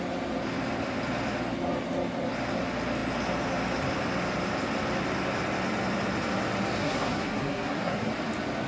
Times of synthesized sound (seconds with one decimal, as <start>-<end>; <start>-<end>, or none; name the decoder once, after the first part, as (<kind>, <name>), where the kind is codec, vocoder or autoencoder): 6.8-8.1 (codec, SNAC)